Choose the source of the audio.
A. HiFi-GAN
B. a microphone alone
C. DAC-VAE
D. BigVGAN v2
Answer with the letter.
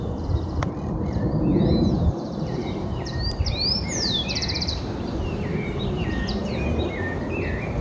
D